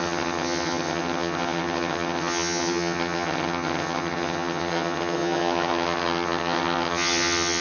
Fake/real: fake